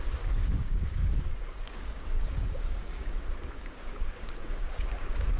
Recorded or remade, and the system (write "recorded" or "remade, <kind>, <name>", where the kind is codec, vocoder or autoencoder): remade, codec, DAC